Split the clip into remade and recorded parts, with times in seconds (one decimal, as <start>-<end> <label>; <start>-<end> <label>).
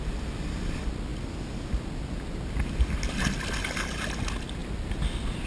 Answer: 0.0-5.5 recorded